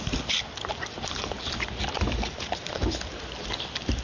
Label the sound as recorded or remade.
recorded